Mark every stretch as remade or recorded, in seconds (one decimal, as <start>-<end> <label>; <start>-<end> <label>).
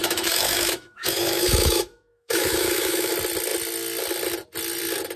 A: 0.0-3.1 remade; 3.1-5.2 recorded